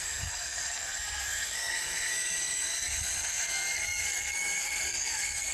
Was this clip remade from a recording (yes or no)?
yes